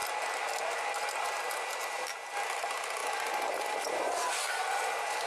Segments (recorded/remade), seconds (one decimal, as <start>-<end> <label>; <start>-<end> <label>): 0.0-5.3 recorded